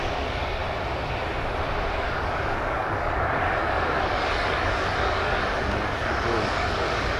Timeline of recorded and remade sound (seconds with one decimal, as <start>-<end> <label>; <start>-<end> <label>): 0.0-0.6 remade; 0.6-1.9 recorded; 1.9-7.2 remade

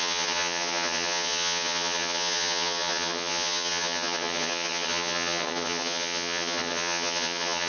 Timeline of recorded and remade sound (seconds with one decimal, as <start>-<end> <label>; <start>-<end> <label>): 0.0-7.7 remade

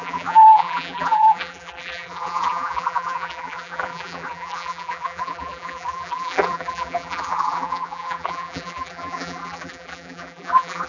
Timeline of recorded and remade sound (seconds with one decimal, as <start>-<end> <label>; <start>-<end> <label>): 0.0-10.9 remade

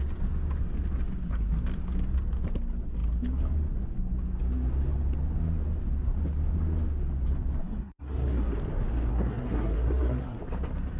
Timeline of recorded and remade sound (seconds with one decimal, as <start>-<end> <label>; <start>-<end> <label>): 0.0-7.6 recorded; 7.6-8.5 remade; 8.5-9.1 recorded; 9.1-10.4 remade; 10.4-11.0 recorded

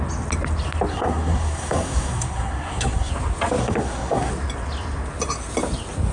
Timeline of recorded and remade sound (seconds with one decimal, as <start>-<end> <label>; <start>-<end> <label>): 0.0-0.9 recorded; 0.9-3.1 remade; 3.1-3.6 recorded; 3.6-4.3 remade; 4.3-6.1 recorded

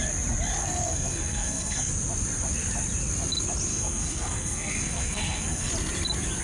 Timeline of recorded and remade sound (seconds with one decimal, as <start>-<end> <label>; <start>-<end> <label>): 0.0-0.6 recorded; 0.6-1.9 remade; 1.9-3.7 recorded; 3.7-5.7 remade; 5.7-6.4 recorded

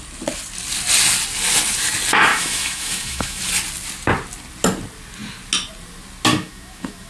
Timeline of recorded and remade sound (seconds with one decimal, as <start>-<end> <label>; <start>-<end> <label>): 0.0-2.3 recorded; 2.3-3.4 remade; 3.4-6.3 recorded; 6.3-7.1 remade